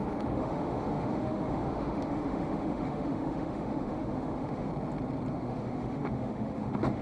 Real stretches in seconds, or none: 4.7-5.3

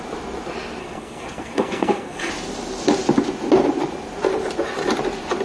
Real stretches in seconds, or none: 0.0-0.8; 2.3-5.4

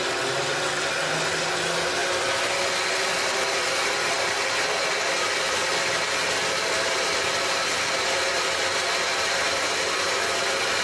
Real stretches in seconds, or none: 0.0-10.8

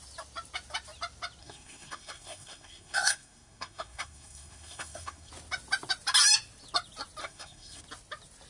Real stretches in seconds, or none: 0.0-1.4; 5.3-7.2; 7.8-8.5

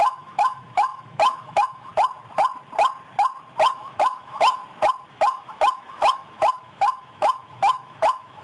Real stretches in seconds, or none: 1.9-3.7; 4.6-5.1

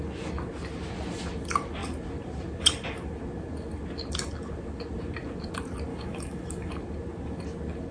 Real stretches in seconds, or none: 0.0-5.9; 6.7-7.9

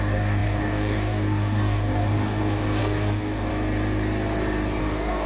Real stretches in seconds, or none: 3.5-4.8